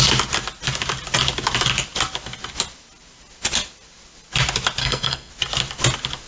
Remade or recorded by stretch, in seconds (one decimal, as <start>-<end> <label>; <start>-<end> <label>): 0.0-4.8 recorded; 4.8-5.3 remade; 5.3-6.3 recorded